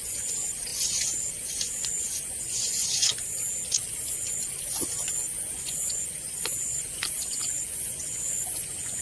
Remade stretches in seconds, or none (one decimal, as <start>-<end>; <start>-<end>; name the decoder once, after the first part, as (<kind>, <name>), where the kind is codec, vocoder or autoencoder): 0.0-3.1 (vocoder, Vocos); 3.7-9.0